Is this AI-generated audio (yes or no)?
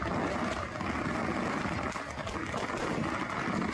no